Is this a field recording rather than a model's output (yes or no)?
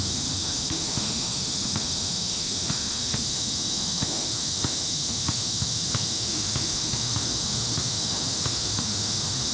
no